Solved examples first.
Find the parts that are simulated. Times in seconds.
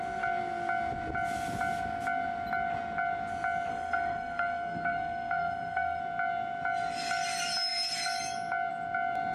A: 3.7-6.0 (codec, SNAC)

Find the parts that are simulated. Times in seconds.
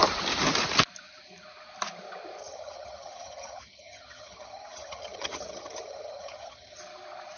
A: 2.4-6.8 (vocoder, HiFi-GAN)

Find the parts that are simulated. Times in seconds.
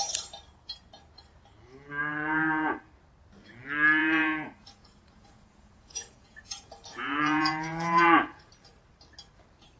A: 2.0-2.9 (vocoder, Vocos); 4.0-8.5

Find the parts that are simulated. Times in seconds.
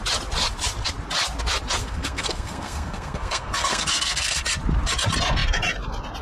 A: 1.8-4.4 (codec, SNAC)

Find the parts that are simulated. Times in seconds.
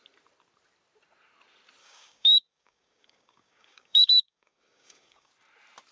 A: 1.8-5.3 (codec, DAC)